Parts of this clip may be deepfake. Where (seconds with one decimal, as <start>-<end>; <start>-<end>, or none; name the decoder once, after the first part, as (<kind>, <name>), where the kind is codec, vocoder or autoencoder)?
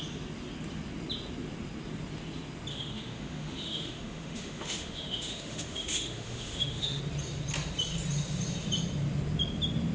2.7-7.0 (autoencoder, DAC-VAE)